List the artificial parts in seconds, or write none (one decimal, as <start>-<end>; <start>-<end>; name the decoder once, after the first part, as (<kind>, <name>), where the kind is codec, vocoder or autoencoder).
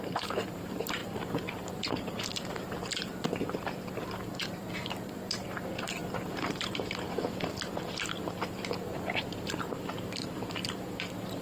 0.0-11.4 (vocoder, BigVGAN v2)